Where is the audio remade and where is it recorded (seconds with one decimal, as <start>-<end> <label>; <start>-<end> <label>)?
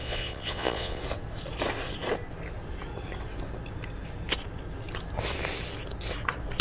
0.0-1.0 remade; 1.0-6.6 recorded